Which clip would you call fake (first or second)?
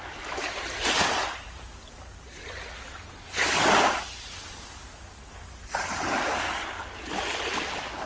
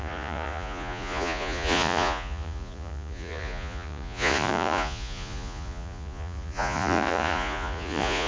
second